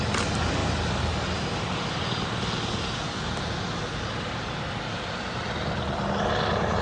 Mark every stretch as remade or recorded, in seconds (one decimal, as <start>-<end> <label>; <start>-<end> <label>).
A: 0.0-6.8 recorded